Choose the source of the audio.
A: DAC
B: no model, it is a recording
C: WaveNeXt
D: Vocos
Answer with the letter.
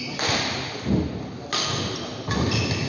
B